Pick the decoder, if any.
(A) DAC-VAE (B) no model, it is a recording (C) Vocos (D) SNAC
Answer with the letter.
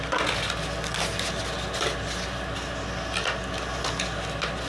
B